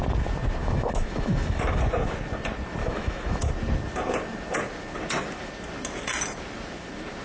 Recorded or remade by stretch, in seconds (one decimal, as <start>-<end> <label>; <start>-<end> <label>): 0.0-0.6 recorded; 0.6-1.8 remade; 1.8-2.8 recorded; 2.8-3.5 remade; 3.5-7.2 recorded